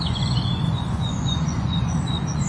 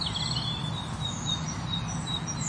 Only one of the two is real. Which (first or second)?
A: second